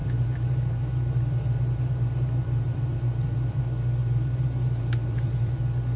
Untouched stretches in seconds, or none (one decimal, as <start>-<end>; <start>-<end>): 3.6-4.0; 5.6-6.0